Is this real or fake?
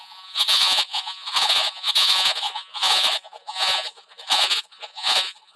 fake